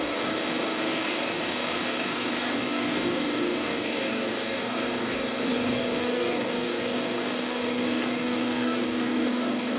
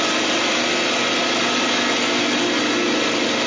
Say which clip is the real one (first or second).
second